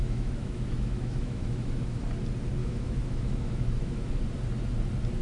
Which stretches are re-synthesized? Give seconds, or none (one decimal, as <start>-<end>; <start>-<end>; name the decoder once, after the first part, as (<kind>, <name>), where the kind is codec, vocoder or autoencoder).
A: 0.0-2.0 (autoencoder, DAC-VAE); 2.6-4.1